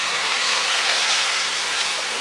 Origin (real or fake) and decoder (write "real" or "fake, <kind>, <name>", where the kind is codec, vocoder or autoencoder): fake, codec, SNAC